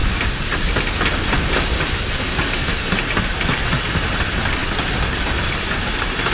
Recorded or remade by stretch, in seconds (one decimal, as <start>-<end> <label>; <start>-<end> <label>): 0.0-6.3 recorded